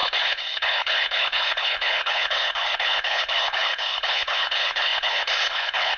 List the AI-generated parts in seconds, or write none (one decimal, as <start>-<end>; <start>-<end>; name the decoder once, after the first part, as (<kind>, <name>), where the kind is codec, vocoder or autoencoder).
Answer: 0.0-6.0 (codec, HILCodec)